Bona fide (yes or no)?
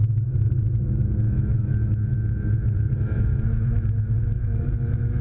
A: no